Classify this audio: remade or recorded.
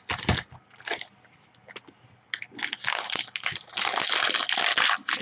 recorded